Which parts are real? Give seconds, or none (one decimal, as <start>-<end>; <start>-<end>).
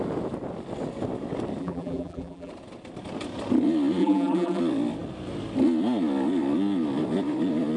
0.0-1.6; 2.5-4.0; 4.6-7.8